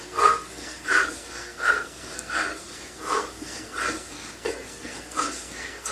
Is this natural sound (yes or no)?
no